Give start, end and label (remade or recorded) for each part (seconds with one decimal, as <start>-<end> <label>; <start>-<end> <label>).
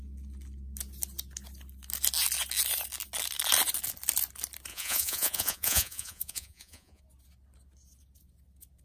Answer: 0.0-4.7 recorded; 4.7-7.0 remade; 7.0-8.8 recorded